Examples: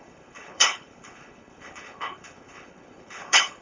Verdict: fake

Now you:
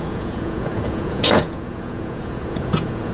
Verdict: fake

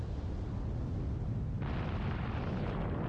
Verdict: real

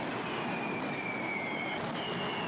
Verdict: real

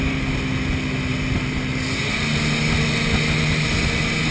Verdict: real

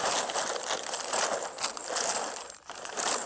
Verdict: real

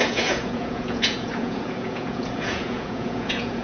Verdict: fake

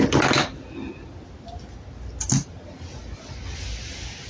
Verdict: real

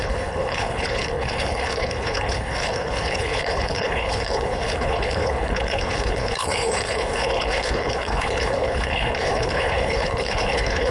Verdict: fake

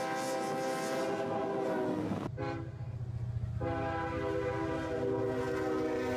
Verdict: real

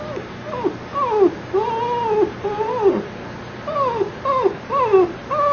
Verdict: real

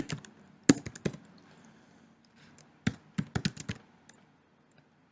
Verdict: real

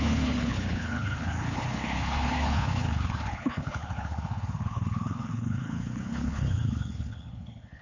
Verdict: fake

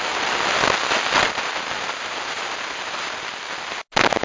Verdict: real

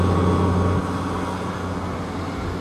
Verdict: real